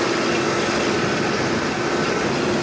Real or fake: real